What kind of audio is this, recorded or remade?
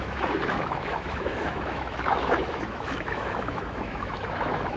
remade